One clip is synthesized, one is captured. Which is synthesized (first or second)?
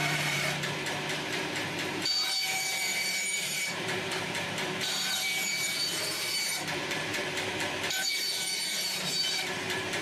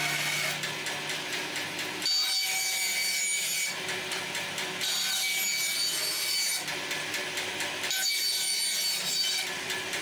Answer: first